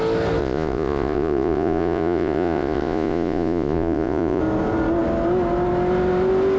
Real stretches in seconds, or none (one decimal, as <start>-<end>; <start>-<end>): 0.0-0.4; 4.4-6.6